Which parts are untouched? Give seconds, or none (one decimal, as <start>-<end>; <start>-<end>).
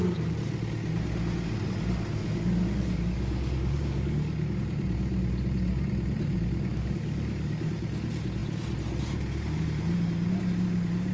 0.0-2.2; 4.6-6.7; 7.7-11.1